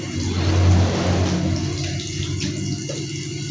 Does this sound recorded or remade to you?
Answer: recorded